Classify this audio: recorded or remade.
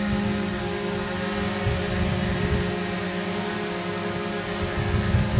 recorded